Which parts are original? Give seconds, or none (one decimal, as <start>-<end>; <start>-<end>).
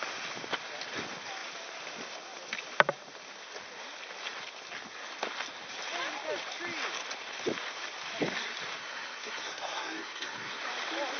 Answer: 0.0-8.8; 10.6-11.2